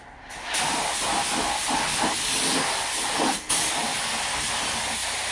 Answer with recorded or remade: recorded